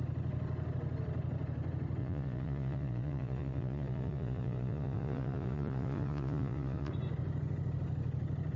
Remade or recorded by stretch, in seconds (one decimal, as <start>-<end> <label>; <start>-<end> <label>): 0.0-2.0 recorded; 2.0-6.9 remade; 6.9-8.6 recorded